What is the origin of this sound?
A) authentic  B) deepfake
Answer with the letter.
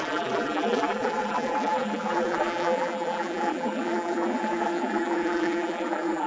B